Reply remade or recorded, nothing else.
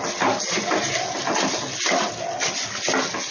recorded